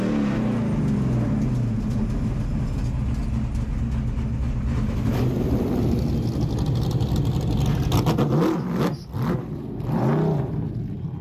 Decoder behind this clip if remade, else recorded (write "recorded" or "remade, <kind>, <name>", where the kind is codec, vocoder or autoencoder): recorded